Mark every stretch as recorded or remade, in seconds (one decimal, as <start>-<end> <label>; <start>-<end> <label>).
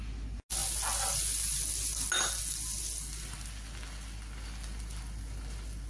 0.0-5.9 recorded